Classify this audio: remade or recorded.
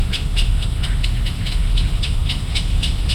remade